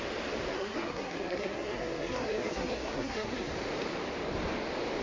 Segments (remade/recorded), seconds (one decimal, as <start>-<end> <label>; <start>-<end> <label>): 0.0-0.5 recorded; 0.5-3.5 remade; 3.5-5.0 recorded